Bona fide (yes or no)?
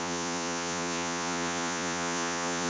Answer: no